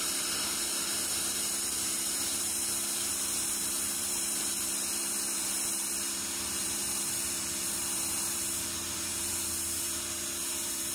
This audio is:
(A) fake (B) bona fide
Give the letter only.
A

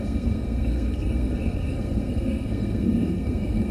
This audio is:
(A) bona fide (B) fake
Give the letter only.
B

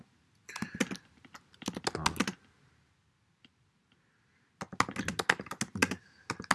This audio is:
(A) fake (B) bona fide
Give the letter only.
B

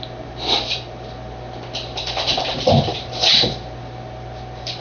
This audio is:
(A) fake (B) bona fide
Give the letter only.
B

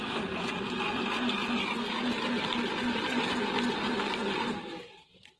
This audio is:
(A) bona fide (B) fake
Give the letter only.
A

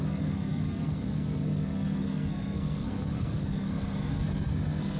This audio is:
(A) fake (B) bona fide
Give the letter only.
A